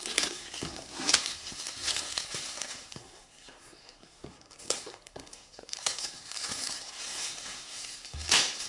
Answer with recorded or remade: remade